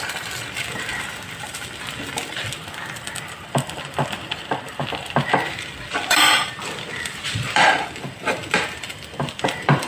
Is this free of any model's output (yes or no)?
no